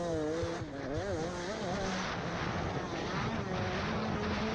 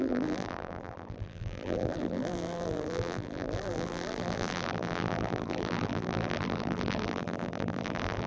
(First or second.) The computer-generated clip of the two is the second